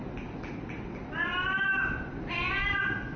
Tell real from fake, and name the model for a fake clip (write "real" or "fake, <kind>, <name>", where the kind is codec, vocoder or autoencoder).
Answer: real